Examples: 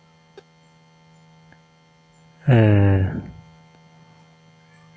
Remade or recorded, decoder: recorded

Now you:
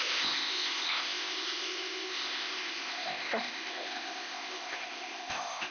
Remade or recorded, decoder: remade, codec, ZipCodec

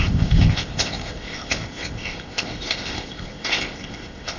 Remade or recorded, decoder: remade, codec, ZipCodec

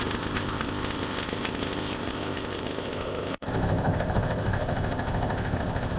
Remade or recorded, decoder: remade, codec, ZipCodec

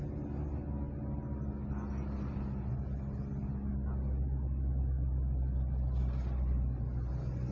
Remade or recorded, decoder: recorded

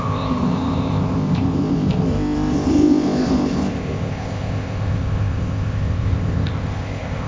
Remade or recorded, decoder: remade, codec, ZipCodec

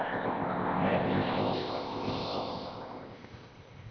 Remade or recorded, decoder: remade, codec, ZipCodec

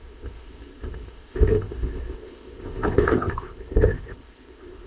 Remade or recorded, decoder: remade, codec, ZipCodec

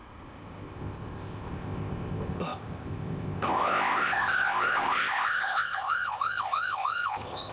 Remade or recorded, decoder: remade, codec, ZipCodec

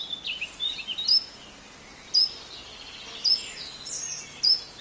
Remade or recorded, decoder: recorded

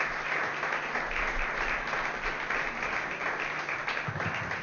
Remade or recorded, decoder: recorded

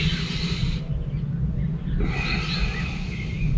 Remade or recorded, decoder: recorded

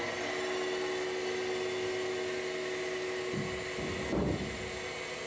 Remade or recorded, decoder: recorded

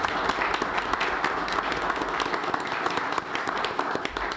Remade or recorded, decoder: recorded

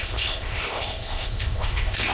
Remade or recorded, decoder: remade, codec, ZipCodec